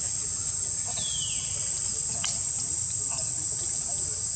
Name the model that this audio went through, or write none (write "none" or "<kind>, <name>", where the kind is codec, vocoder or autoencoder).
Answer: none